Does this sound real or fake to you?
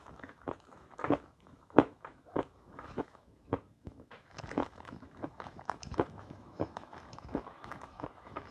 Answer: fake